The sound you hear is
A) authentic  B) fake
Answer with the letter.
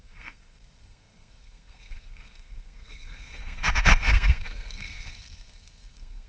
B